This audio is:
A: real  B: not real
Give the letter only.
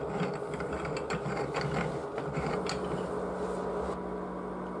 A